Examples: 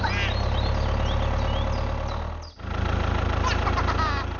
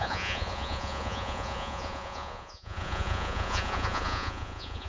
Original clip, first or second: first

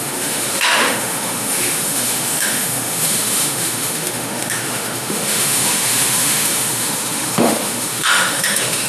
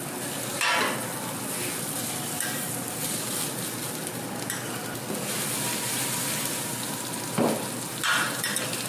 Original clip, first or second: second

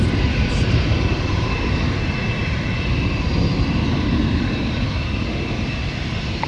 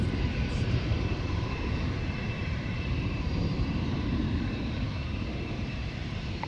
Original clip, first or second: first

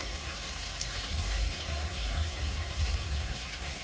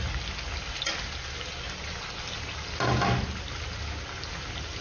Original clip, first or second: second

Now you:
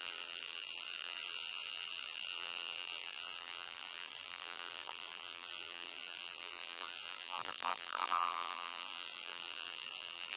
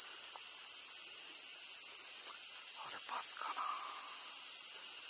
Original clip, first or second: second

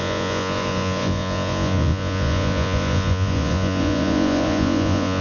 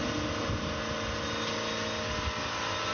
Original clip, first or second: second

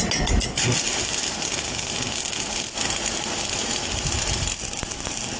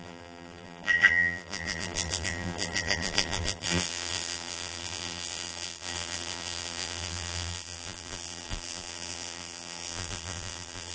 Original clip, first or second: first